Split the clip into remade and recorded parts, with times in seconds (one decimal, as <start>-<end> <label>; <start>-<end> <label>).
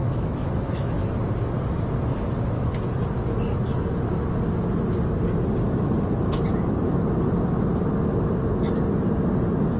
0.0-0.9 remade; 0.9-9.8 recorded